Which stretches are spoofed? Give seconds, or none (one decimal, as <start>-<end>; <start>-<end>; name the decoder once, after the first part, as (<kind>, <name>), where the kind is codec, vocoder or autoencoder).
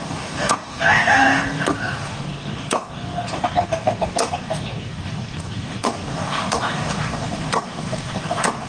0.0-8.7 (codec, DAC)